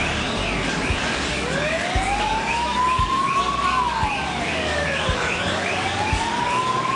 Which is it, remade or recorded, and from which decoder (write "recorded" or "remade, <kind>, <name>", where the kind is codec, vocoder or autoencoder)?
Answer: remade, codec, DAC